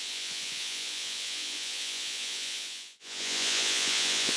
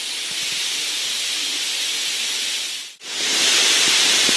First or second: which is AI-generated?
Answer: first